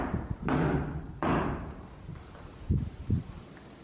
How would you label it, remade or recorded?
recorded